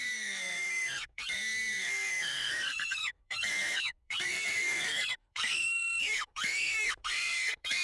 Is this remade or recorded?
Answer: remade